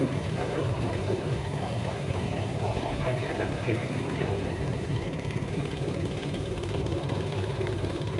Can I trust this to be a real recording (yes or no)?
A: no